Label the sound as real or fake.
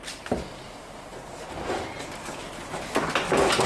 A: real